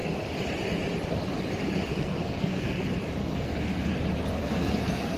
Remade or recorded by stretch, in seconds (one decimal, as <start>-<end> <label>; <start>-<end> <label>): 0.0-1.9 recorded; 1.9-2.8 remade; 2.8-3.2 recorded; 3.2-3.9 remade; 3.9-4.4 recorded; 4.4-5.2 remade